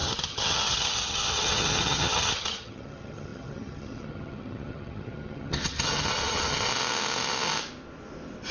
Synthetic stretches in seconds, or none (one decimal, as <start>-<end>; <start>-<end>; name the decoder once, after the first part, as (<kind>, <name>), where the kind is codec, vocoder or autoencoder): 0.0-6.7 (vocoder, HiFi-GAN)